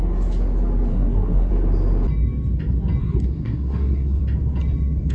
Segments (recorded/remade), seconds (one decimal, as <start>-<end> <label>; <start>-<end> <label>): 0.0-0.9 recorded; 0.9-1.5 remade; 1.5-3.0 recorded; 3.0-4.2 remade; 4.2-5.1 recorded